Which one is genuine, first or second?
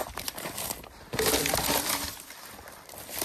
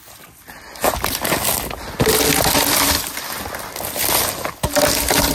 second